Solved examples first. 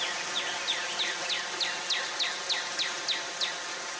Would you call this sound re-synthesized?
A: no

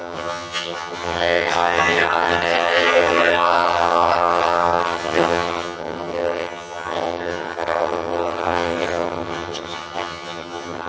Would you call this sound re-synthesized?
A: yes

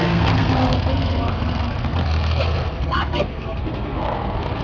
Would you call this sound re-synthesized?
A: yes